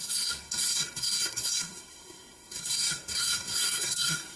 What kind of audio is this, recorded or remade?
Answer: remade